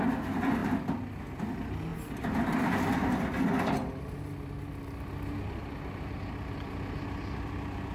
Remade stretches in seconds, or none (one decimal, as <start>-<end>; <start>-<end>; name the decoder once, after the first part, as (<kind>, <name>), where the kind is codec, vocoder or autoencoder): none